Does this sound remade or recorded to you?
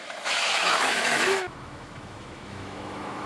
remade